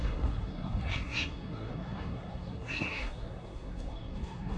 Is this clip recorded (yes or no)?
no